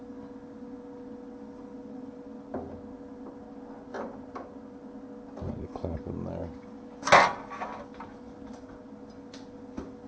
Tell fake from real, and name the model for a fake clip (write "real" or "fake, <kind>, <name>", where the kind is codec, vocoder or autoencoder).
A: real